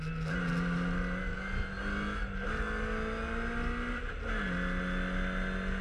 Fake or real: real